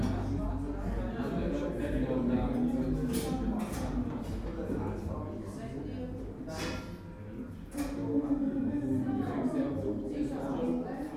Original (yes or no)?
yes